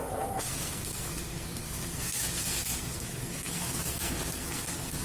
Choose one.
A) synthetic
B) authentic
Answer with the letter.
A